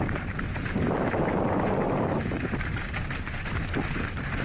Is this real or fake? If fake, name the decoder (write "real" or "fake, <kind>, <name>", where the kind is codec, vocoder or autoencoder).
fake, vocoder, BigVGAN v2